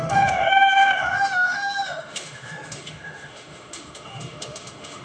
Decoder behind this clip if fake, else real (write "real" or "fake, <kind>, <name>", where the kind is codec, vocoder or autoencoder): fake, autoencoder, DAC-VAE